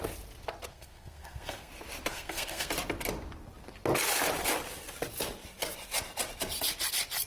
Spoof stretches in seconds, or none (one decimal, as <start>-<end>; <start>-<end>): 0.7-1.7; 2.1-2.7